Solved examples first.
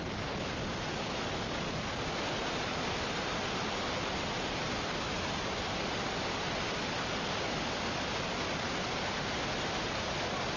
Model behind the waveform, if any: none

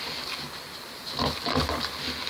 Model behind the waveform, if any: none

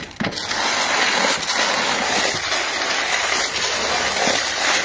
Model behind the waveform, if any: none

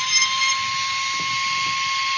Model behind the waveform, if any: none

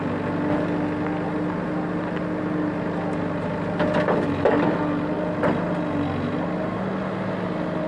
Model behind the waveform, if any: none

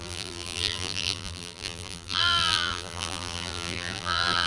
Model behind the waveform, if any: vocoder, BigVGAN v2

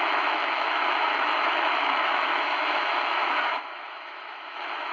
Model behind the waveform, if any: autoencoder, DAC-VAE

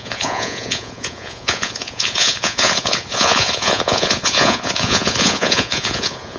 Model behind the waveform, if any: vocoder, Vocos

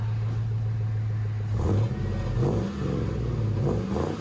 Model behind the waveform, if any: none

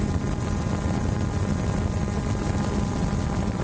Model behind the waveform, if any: none